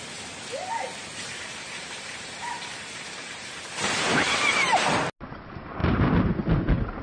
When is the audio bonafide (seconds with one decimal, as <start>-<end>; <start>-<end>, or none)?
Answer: 0.0-0.9; 5.1-5.8; 6.3-7.0